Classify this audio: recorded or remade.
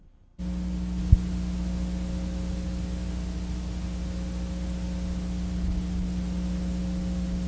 recorded